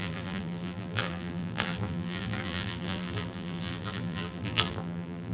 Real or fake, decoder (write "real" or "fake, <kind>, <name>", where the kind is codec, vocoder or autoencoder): fake, vocoder, BigVGAN v2